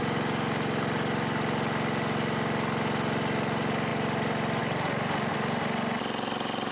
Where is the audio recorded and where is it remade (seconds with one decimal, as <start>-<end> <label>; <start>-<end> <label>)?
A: 0.0-6.7 recorded